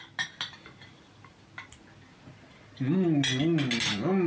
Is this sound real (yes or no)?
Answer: yes